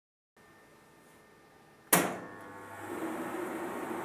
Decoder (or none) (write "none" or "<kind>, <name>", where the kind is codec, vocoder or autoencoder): none